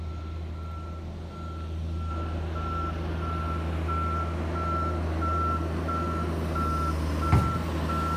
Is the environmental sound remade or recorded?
recorded